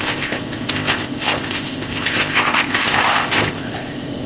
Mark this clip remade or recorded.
remade